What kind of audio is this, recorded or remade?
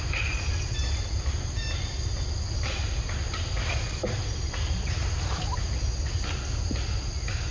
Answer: recorded